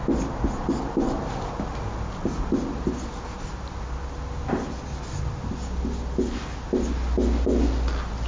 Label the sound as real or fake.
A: real